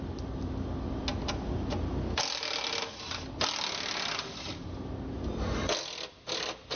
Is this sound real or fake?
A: real